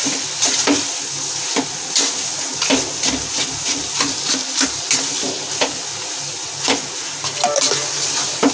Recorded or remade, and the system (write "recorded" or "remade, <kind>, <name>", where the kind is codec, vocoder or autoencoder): recorded